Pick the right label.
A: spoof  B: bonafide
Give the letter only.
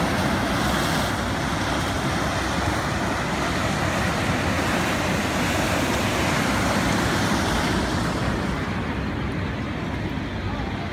B